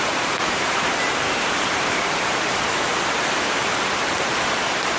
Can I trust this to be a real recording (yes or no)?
no